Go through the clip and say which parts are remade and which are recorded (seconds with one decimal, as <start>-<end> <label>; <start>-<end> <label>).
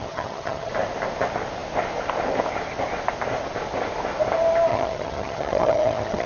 0.0-0.7 remade; 0.7-4.7 recorded; 4.7-6.3 remade